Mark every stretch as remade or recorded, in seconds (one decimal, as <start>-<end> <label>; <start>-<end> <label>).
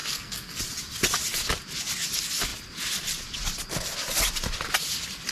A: 0.0-0.6 remade; 0.6-5.3 recorded